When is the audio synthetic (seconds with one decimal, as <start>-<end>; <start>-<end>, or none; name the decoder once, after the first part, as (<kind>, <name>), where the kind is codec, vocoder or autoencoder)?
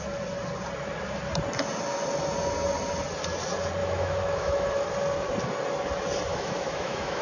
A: 3.8-4.8 (autoencoder, DAC-VAE); 6.3-7.2